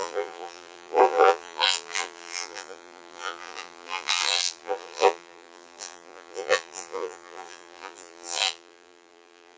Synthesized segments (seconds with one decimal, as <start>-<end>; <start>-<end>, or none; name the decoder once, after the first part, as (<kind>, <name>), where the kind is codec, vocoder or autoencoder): 0.0-9.6 (vocoder, BigVGAN v2)